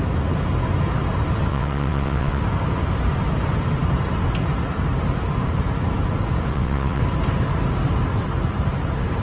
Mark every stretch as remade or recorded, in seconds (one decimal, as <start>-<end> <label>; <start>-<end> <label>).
0.0-1.5 recorded; 1.5-2.4 remade; 2.4-6.5 recorded; 6.5-7.0 remade; 7.0-9.2 recorded